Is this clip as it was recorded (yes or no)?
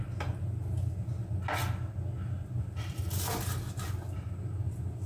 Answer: yes